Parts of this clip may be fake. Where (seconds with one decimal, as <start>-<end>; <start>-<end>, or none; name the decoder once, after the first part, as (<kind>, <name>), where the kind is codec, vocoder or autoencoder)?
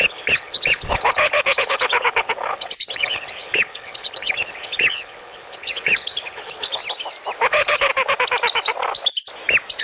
0.0-6.8 (codec, HILCodec); 7.5-7.9